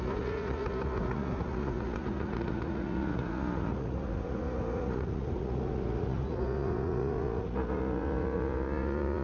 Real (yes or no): no